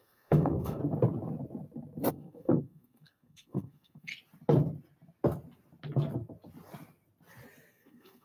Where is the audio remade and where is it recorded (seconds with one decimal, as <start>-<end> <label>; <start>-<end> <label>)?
0.0-0.8 remade; 0.8-2.1 recorded; 2.1-4.1 remade; 4.1-7.7 recorded; 7.7-8.2 remade